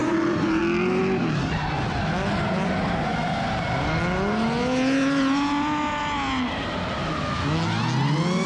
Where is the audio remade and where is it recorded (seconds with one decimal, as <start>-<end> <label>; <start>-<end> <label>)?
0.0-0.6 remade; 0.6-8.5 recorded